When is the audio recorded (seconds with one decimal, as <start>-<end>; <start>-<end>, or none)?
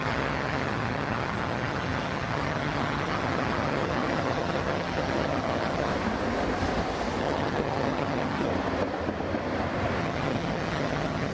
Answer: 5.9-7.2; 8.5-10.0